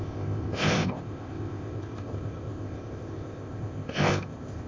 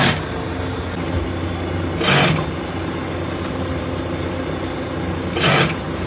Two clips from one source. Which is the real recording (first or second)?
second